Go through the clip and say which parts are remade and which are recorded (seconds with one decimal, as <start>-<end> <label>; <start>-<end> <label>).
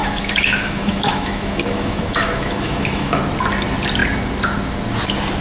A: 0.0-3.2 remade; 3.2-5.4 recorded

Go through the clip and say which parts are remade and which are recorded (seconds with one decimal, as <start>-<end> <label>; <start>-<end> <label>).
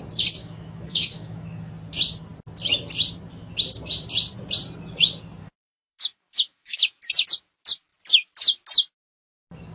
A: 0.0-0.4 recorded; 0.4-1.7 remade; 1.7-5.4 recorded; 5.4-7.0 remade; 7.0-9.7 recorded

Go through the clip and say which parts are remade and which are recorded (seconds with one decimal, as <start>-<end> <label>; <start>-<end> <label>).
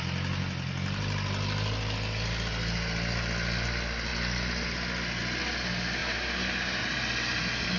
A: 0.0-7.8 recorded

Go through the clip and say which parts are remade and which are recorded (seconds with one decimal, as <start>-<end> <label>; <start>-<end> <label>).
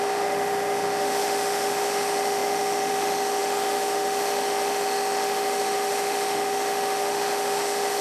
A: 0.0-8.0 remade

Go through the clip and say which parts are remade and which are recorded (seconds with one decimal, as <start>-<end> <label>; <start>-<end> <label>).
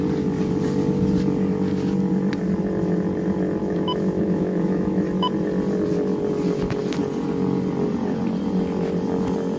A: 0.0-3.6 recorded; 3.6-5.3 remade; 5.3-9.6 recorded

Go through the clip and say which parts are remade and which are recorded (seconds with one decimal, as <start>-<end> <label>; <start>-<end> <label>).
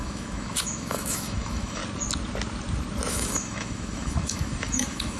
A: 0.0-1.8 remade; 1.8-3.1 recorded; 3.1-5.2 remade